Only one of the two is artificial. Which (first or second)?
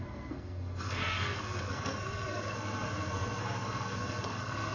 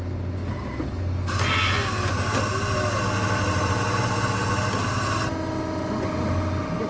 first